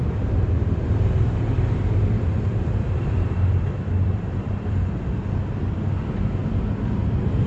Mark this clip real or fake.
fake